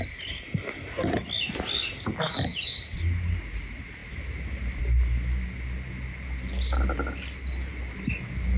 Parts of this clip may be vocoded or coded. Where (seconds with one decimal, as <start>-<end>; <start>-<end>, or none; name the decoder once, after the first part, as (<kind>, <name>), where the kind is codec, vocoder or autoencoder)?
none